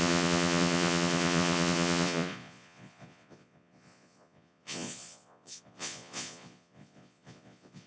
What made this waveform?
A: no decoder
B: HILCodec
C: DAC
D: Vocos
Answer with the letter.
D